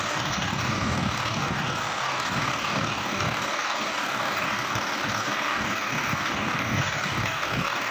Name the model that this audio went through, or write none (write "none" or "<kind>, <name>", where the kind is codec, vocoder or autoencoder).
codec, DAC